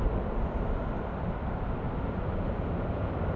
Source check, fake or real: fake